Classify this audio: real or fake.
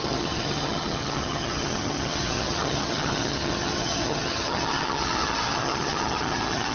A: fake